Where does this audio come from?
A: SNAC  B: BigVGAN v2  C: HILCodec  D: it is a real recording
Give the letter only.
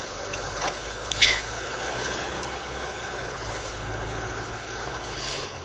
C